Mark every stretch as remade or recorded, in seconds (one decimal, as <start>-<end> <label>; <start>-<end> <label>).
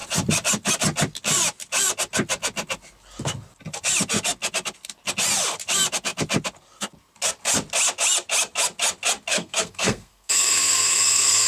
0.0-9.3 recorded; 9.3-11.5 remade